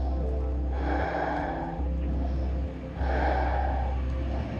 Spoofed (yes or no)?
no